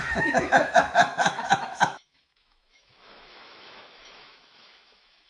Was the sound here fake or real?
fake